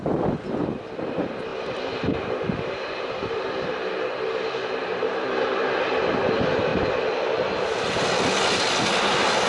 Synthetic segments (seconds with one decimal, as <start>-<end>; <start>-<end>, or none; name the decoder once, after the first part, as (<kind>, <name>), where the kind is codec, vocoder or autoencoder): 1.5-3.9 (vocoder, BigVGAN v2); 4.8-5.8